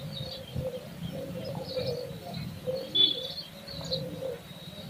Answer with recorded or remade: recorded